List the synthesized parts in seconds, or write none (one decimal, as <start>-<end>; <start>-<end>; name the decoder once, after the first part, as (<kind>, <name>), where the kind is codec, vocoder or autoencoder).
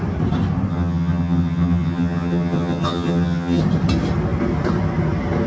0.7-3.6 (vocoder, HiFi-GAN)